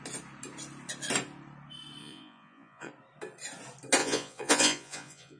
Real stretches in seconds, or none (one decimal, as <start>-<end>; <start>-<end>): 0.0-2.0; 2.9-4.0